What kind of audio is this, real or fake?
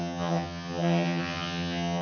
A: fake